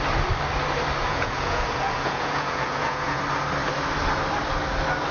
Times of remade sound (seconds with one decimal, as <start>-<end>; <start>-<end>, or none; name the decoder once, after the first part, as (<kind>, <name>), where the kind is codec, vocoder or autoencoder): 1.0-3.2 (vocoder, Vocos)

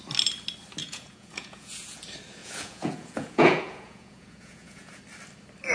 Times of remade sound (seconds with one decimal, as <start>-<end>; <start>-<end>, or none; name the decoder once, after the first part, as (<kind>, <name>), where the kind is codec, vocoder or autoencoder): 0.8-2.0 (vocoder, Vocos); 2.4-5.0

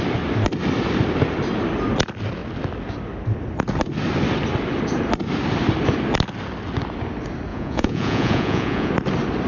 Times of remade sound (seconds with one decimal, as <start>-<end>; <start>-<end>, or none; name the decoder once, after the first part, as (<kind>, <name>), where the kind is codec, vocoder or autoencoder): 7.5-8.9 (vocoder, Vocos)

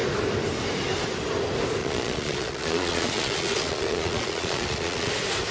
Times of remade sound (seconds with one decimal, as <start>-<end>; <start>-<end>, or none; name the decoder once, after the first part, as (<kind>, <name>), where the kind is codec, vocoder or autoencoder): 1.8-5.1 (vocoder, Vocos)

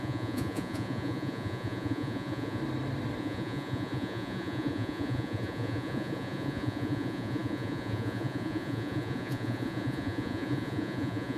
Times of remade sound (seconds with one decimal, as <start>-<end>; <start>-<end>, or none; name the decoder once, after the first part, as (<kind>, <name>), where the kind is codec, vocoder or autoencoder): 0.0-2.6 (vocoder, Vocos); 3.2-11.4

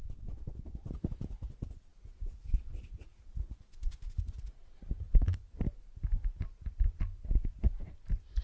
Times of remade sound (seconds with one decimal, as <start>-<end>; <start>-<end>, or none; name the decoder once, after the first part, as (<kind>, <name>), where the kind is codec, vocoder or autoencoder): none

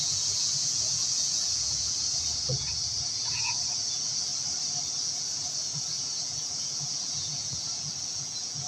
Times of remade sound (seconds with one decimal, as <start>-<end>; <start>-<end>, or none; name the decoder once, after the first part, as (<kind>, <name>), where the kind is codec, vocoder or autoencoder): 0.0-4.3 (vocoder, Vocos); 5.0-8.7

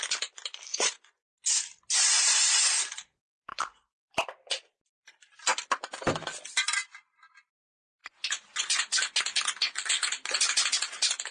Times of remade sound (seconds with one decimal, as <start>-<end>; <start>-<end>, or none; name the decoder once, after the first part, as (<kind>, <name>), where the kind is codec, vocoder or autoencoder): 0.7-1.3 (vocoder, Vocos); 3.5-4.1; 8.0-9.2